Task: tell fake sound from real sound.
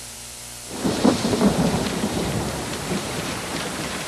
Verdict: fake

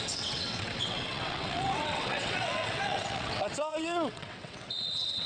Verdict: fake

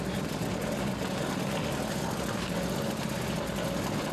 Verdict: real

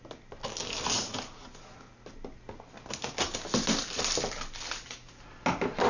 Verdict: real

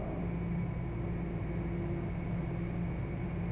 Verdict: real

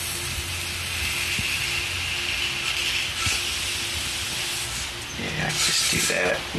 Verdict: real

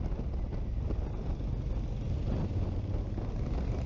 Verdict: real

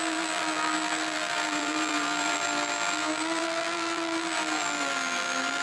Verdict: fake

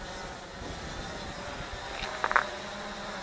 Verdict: real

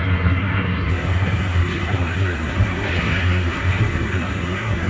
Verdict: fake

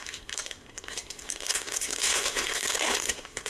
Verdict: fake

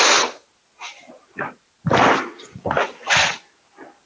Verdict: real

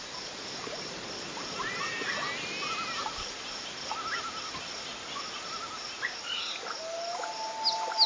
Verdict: real